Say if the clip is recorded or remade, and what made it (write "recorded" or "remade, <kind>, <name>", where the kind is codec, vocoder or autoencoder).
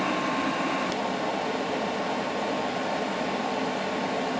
recorded